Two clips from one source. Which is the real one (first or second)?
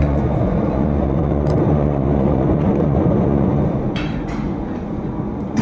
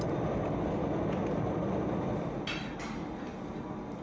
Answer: second